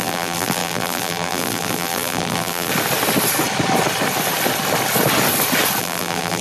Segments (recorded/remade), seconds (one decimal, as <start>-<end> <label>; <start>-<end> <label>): 0.0-2.7 remade; 2.7-5.8 recorded; 5.8-6.4 remade